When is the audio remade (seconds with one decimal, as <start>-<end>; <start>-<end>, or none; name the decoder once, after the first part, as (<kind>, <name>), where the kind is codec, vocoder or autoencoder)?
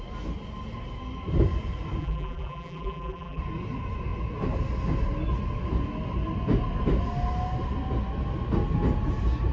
2.0-3.4 (vocoder, BigVGAN v2)